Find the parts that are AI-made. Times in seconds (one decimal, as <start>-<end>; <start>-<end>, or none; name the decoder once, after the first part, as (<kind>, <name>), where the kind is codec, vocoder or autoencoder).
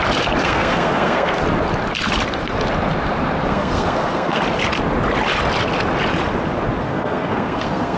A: 0.4-1.4 (codec, SNAC); 3.5-4.4; 6.8-8.0